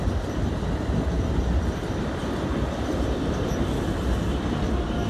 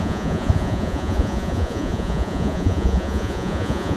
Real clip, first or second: first